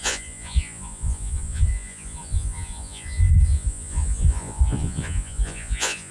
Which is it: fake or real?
fake